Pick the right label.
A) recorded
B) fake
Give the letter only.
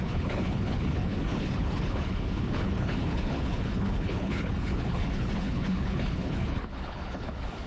B